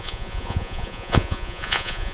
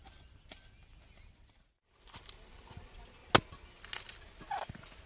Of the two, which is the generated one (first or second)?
first